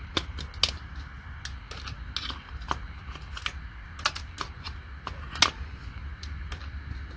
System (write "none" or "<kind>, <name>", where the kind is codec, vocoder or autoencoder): none